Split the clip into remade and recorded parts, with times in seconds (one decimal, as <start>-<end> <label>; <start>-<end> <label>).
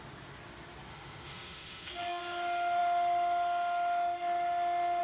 0.0-0.9 recorded; 0.9-2.2 remade; 2.2-5.0 recorded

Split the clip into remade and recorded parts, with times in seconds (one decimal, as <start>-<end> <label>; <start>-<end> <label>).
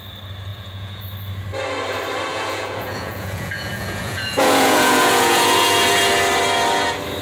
0.0-0.5 recorded; 0.5-1.0 remade; 1.0-2.3 recorded; 2.3-6.0 remade; 6.0-7.2 recorded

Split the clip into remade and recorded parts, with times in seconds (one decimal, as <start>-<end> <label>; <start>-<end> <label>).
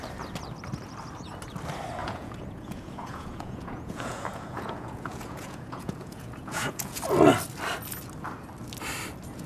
0.0-2.0 recorded; 2.0-7.0 remade; 7.0-9.5 recorded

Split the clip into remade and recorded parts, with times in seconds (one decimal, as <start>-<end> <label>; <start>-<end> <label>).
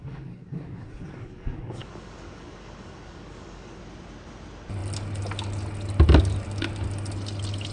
0.0-3.8 remade; 3.8-7.7 recorded